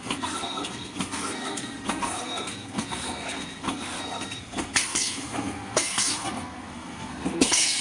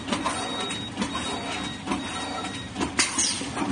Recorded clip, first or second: second